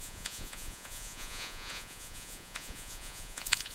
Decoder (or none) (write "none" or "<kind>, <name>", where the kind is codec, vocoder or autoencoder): vocoder, Vocos